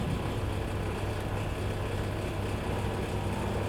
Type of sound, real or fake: real